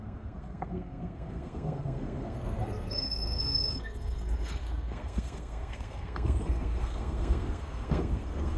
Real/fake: fake